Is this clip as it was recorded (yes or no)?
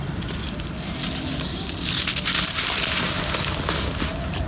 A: yes